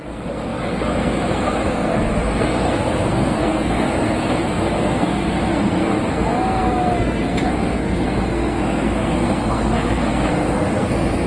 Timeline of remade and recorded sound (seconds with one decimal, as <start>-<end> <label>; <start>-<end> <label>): 0.0-11.3 remade